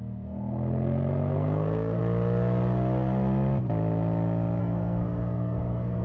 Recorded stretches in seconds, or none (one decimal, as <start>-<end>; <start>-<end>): 2.0-4.6